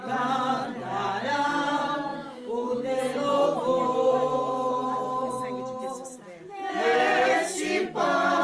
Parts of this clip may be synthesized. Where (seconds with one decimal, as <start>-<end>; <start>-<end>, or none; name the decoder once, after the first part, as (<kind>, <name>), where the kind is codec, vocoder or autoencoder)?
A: 2.1-3.0 (autoencoder, DAC-VAE)